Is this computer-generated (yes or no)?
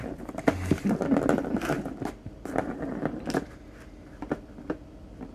yes